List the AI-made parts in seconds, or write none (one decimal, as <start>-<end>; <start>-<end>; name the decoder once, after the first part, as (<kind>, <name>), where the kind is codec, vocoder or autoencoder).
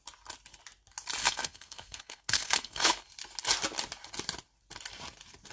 1.2-3.0 (codec, SNAC)